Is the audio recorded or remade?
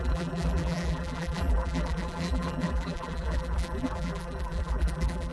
remade